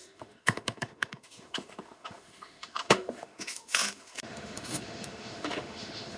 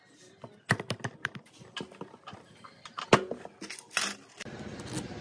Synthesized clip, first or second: first